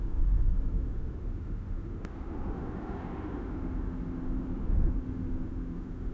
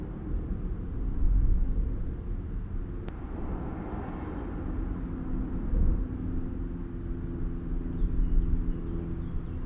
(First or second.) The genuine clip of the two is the second